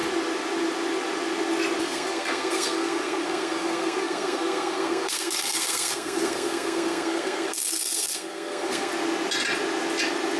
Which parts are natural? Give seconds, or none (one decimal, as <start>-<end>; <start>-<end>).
0.0-1.8; 8.9-10.4